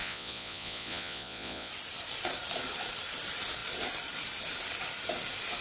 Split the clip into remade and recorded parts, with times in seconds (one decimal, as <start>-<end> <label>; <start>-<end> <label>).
0.0-1.7 remade; 1.7-5.6 recorded